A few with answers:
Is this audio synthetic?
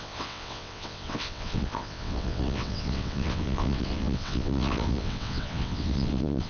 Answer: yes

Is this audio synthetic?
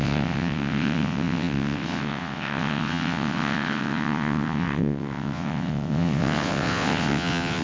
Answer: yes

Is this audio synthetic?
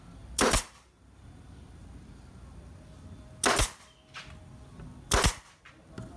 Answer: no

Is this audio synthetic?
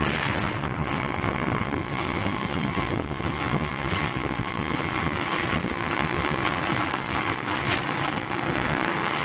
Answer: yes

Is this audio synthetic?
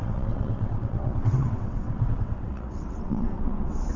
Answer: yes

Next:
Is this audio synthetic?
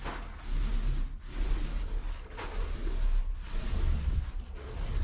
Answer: no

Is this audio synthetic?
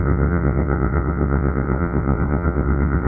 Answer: yes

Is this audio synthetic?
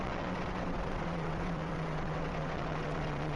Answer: yes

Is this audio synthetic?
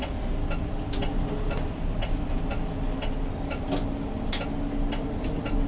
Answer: no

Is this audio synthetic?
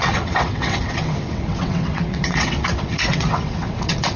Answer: yes